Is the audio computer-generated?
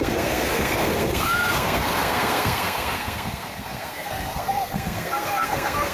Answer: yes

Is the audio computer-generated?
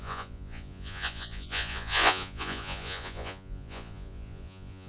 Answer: yes